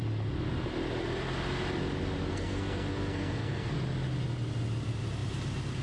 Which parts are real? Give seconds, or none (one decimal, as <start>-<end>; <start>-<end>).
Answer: 0.0-2.3; 3.7-5.8